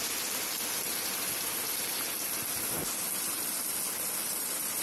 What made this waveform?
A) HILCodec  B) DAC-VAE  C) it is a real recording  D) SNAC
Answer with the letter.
C